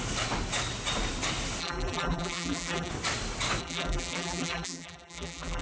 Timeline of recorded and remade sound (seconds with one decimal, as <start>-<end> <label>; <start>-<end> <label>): 0.0-1.6 recorded; 1.6-2.9 remade; 2.9-3.6 recorded; 3.6-5.6 remade